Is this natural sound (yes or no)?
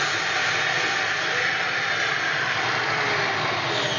yes